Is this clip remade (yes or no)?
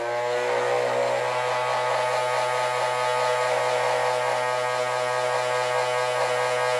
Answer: no